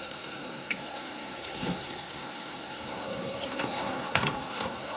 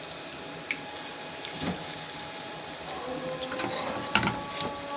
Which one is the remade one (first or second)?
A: first